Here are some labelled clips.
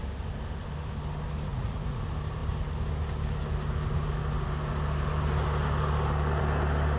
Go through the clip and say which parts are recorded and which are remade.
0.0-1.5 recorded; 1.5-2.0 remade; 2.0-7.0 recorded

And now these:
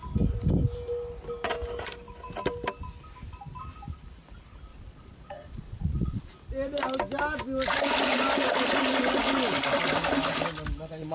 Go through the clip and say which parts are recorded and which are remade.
0.0-4.7 recorded; 4.7-6.3 remade; 6.3-11.1 recorded

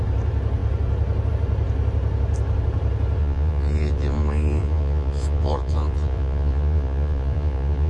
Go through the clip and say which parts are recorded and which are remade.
0.0-3.2 recorded; 3.2-7.9 remade